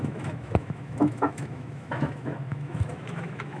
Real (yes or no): no